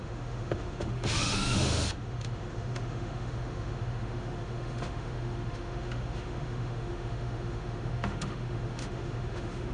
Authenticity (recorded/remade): remade